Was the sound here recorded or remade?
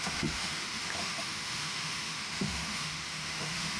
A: remade